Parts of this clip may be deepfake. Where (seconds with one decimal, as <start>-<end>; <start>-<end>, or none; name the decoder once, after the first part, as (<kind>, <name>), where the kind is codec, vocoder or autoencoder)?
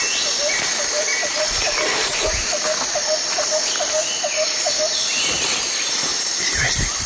1.3-2.3 (vocoder, BigVGAN v2); 6.1-7.1